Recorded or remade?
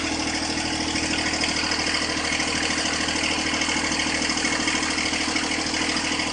recorded